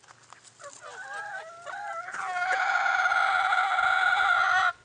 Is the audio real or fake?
real